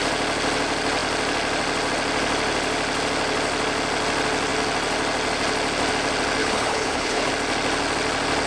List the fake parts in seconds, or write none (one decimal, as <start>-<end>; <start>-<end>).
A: 6.4-7.3